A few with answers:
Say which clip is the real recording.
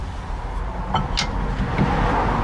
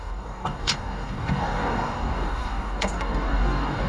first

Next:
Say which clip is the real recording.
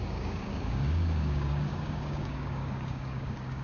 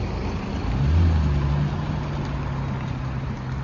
second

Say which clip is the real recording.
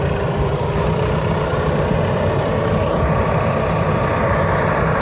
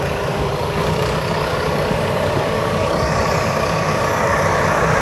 first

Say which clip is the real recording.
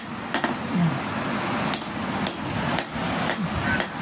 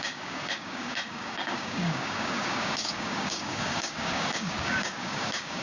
first